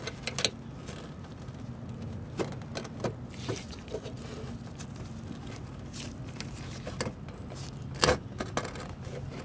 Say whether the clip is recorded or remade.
recorded